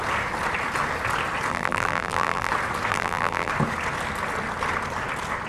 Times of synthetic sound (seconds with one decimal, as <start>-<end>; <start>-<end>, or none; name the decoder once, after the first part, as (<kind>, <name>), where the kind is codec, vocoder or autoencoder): 1.5-2.5 (vocoder, BigVGAN v2); 2.9-3.5